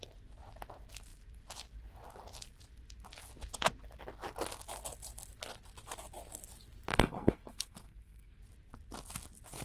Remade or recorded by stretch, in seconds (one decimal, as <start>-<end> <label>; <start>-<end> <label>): 0.0-6.9 recorded; 6.9-8.4 remade; 8.4-9.6 recorded